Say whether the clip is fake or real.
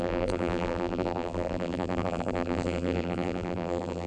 fake